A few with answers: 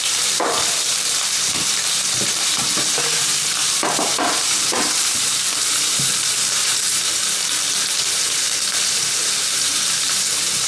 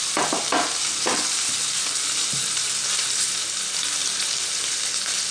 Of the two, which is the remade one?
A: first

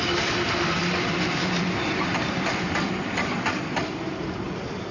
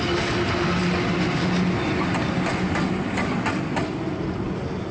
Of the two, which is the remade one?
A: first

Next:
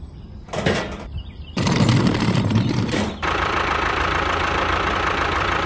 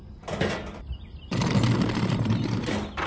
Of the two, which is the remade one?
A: first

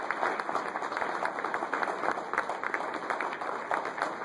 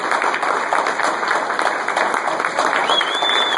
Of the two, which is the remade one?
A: second